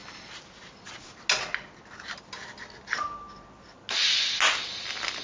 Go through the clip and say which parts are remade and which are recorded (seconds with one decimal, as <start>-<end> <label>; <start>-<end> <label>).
0.0-5.2 recorded